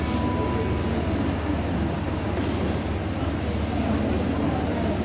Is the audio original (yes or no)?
yes